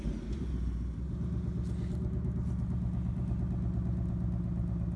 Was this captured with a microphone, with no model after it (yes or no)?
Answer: yes